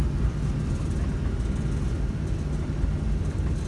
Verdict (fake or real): real